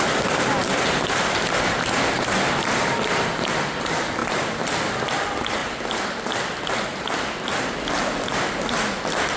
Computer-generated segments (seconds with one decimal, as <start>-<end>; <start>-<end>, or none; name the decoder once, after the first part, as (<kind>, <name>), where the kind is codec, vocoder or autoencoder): 4.2-5.1 (vocoder, BigVGAN v2)